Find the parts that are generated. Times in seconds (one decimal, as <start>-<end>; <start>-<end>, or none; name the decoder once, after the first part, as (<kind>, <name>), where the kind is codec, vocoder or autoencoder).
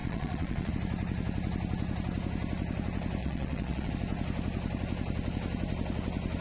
0.0-0.7 (vocoder, Vocos); 3.2-3.9